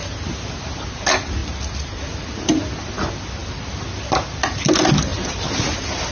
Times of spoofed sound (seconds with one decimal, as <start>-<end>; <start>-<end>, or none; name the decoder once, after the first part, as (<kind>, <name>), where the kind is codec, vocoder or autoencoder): none